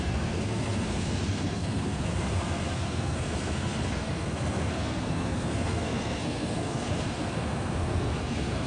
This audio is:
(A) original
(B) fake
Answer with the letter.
B